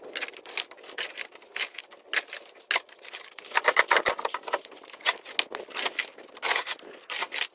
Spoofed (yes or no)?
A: no